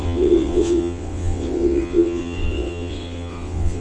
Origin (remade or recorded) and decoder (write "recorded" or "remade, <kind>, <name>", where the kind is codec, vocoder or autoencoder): remade, vocoder, WaveNeXt